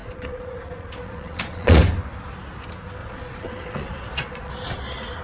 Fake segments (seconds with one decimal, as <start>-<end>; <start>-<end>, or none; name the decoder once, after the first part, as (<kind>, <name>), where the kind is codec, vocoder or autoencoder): 0.0-1.8 (vocoder, Vocos); 3.0-5.2